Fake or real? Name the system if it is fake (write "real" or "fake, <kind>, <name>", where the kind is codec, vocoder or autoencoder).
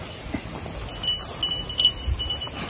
real